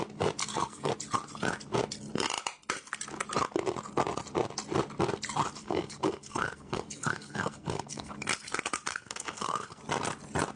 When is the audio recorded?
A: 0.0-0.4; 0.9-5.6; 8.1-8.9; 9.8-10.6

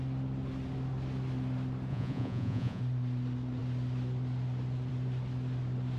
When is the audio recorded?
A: 0.0-1.9; 2.8-6.0

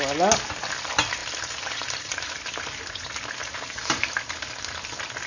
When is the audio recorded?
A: 0.0-1.2; 4.1-5.3

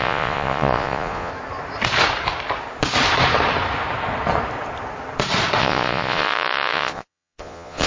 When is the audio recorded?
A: 1.3-5.6

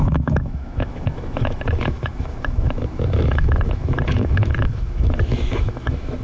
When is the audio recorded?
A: none

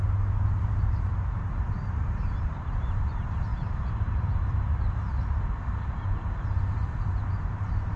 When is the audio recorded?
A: 0.0-0.6

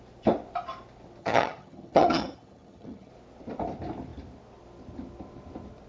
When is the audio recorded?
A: 0.0-1.2; 3.1-5.9

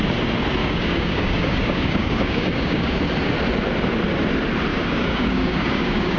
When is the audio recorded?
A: 0.0-0.6; 3.0-4.7